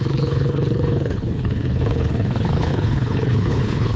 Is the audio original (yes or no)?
no